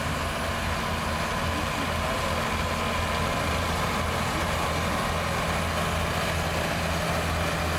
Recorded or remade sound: recorded